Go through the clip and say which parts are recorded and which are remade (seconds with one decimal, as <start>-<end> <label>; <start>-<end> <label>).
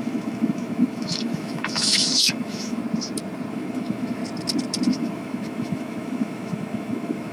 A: 0.0-2.8 remade; 2.8-3.5 recorded; 3.5-4.2 remade; 4.2-4.9 recorded; 4.9-7.3 remade